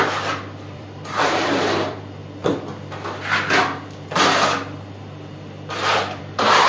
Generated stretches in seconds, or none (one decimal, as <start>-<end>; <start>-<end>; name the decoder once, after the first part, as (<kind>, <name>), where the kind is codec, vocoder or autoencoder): 0.0-2.2 (vocoder, BigVGAN v2); 6.2-6.7